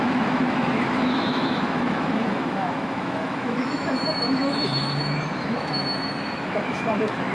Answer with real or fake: fake